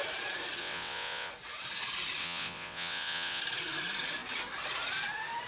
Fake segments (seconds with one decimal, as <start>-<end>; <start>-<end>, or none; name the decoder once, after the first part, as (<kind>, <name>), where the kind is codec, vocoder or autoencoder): 0.6-1.3 (vocoder, WaveNeXt); 2.2-3.4